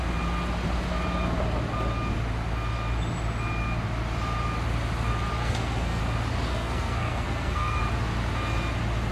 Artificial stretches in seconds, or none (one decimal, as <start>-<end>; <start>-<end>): 5.4-6.0; 6.5-7.8